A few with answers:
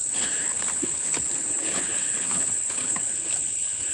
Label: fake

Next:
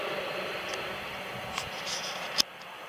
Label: real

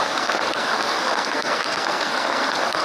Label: fake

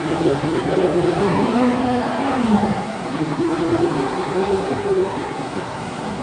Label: fake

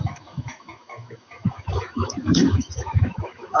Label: fake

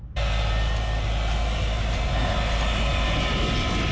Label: real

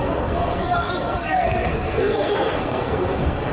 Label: fake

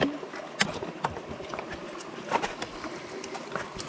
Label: real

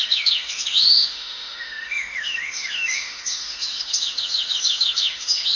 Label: fake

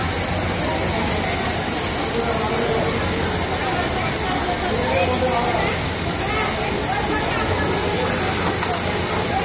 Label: real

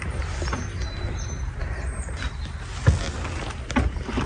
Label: real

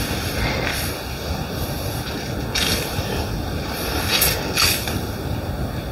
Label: real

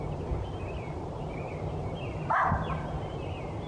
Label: fake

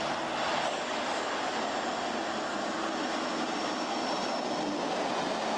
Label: real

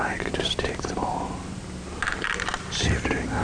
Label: real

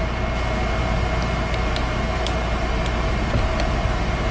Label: real